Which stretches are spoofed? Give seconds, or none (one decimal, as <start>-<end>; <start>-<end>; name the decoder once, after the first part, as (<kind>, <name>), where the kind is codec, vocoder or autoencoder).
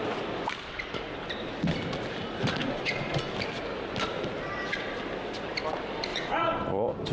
2.6-3.3 (vocoder, Vocos); 6.1-6.6